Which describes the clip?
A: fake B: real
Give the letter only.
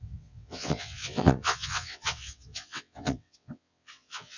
A